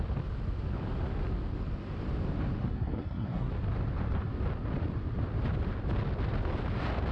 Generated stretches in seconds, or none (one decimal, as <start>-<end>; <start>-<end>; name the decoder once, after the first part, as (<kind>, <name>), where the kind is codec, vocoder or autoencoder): 2.6-3.5 (codec, SNAC)